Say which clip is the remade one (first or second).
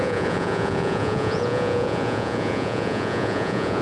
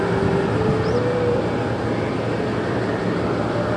first